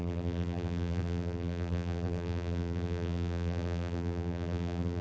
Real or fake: fake